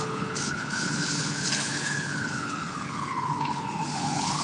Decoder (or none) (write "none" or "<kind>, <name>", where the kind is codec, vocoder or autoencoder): codec, HILCodec